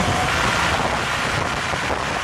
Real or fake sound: real